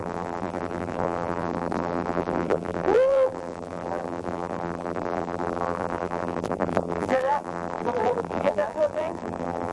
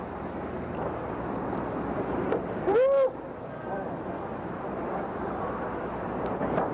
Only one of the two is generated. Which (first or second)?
first